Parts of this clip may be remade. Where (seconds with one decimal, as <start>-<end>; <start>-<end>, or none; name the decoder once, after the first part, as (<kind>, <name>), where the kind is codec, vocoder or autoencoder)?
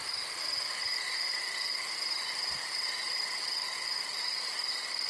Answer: 0.0-5.1 (vocoder, BigVGAN v2)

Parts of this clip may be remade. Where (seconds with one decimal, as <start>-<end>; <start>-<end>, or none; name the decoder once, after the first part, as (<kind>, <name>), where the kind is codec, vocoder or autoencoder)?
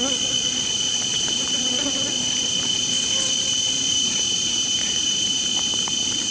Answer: 1.1-1.7 (vocoder, BigVGAN v2); 3.9-5.5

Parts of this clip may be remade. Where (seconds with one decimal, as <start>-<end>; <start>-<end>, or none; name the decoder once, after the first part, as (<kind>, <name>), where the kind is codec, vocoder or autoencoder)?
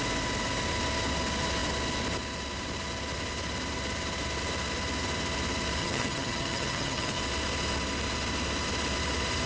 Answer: 5.8-7.2 (vocoder, HiFi-GAN)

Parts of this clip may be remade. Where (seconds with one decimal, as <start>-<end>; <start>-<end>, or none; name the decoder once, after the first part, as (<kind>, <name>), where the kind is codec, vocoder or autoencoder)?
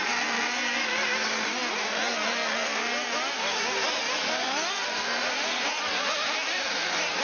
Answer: none